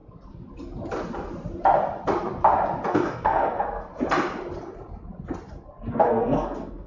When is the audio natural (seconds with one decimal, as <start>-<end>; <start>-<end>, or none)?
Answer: 0.0-2.9; 3.9-5.9